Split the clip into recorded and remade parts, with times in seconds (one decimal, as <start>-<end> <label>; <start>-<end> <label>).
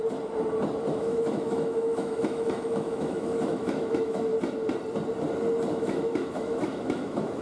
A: 0.0-0.9 recorded; 0.9-4.3 remade; 4.3-5.7 recorded; 5.7-7.4 remade